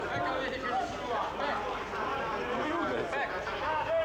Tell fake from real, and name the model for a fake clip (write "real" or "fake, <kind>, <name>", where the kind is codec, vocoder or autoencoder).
real